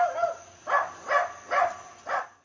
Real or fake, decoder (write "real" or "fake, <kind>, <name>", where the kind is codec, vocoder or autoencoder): real